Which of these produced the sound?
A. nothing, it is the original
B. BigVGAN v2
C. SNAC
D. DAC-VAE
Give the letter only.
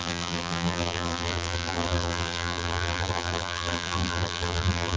B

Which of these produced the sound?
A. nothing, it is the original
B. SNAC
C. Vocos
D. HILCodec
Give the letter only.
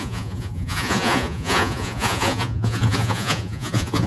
C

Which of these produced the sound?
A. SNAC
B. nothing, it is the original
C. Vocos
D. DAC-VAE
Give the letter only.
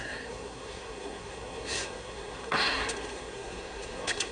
A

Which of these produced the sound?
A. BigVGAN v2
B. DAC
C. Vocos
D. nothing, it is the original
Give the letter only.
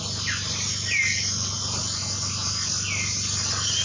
D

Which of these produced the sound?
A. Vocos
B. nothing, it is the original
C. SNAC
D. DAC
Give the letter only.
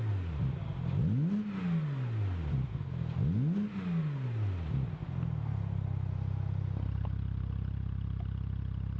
B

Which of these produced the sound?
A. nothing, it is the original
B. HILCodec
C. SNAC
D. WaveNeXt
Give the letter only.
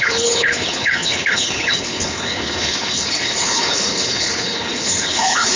B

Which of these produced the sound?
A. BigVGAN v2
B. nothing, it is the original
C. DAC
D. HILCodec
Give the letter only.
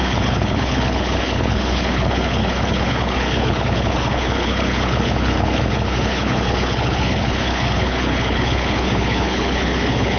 D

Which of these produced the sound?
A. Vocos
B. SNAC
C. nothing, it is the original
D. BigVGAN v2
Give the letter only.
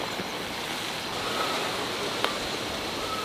C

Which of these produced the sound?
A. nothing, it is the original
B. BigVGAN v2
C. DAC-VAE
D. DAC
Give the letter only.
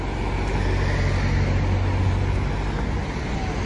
A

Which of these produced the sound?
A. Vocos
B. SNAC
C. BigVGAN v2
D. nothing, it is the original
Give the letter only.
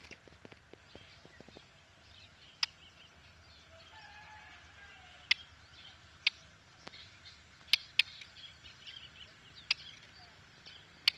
D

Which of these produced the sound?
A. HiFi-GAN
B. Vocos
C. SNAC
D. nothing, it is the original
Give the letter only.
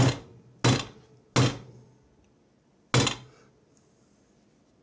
D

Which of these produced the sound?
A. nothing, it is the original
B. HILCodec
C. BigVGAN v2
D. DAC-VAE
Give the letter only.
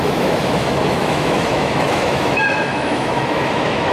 D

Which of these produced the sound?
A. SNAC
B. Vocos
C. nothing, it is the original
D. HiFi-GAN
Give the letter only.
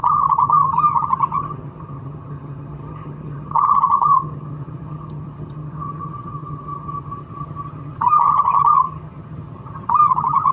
D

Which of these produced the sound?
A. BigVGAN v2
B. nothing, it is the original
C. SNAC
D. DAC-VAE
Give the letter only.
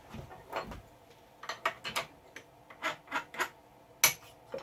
B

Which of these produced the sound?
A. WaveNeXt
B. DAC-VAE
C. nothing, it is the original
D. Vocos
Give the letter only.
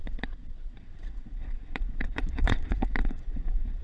D